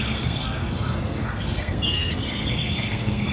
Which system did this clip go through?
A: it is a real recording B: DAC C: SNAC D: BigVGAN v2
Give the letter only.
C